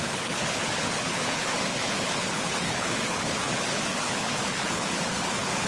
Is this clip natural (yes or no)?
no